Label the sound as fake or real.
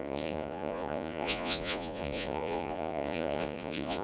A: fake